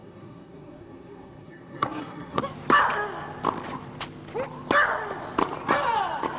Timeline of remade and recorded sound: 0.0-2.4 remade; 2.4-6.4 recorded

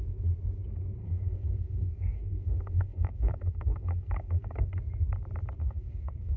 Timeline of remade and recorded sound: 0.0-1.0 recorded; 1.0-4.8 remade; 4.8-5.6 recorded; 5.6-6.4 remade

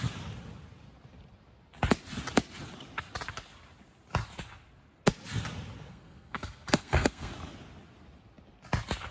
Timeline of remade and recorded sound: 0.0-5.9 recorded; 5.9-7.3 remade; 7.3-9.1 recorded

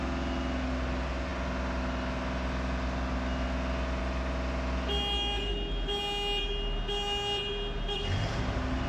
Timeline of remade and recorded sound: 0.0-8.9 recorded

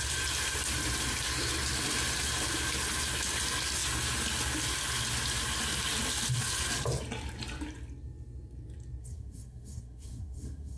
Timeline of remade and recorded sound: 0.0-9.0 recorded; 9.0-10.8 remade